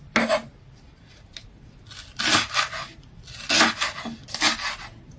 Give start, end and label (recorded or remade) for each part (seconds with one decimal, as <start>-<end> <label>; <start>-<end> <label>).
0.0-5.2 recorded